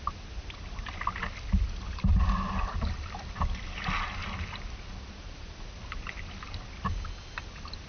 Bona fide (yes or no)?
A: yes